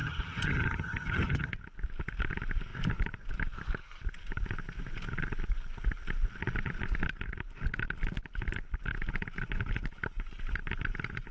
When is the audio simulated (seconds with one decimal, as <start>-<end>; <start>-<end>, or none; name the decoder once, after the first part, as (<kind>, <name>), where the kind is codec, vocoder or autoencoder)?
0.0-1.5 (vocoder, HiFi-GAN)

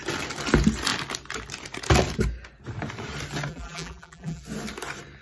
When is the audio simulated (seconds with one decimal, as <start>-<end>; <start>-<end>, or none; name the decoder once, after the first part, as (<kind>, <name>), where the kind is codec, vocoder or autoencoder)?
3.5-4.4 (vocoder, BigVGAN v2)